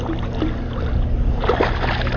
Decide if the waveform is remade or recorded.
recorded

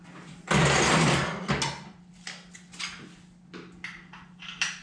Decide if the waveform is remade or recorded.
recorded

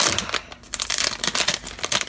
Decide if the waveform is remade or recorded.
recorded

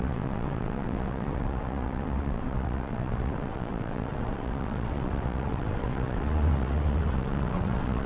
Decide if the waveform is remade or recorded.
remade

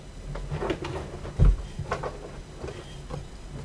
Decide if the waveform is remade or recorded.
recorded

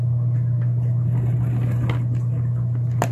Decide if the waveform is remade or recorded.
recorded